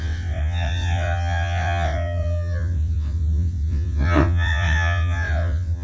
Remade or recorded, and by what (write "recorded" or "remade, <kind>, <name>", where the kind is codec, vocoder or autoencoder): remade, vocoder, WaveNeXt